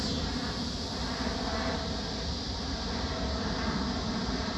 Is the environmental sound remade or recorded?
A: recorded